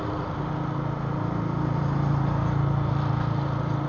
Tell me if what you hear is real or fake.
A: real